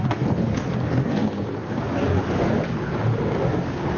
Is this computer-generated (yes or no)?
no